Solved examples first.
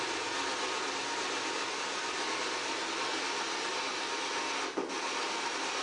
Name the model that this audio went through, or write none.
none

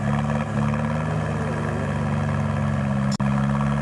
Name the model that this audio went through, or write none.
none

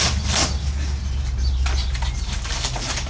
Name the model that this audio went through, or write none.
none